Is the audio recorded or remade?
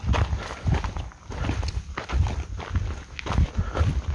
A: recorded